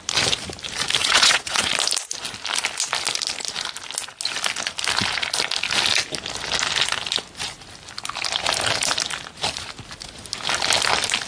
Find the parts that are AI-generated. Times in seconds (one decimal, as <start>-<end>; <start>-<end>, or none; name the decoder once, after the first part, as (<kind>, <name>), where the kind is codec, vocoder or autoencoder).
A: 1.0-1.7 (vocoder, WaveNeXt)